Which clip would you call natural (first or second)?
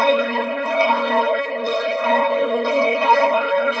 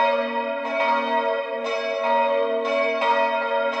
second